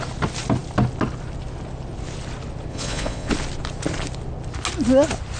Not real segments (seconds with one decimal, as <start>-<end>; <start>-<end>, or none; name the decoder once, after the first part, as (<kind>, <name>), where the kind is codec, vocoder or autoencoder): 2.7-3.3 (vocoder, Vocos)